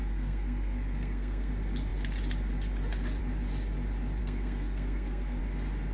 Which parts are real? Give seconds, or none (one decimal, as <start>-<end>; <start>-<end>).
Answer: 1.5-4.2; 5.4-5.9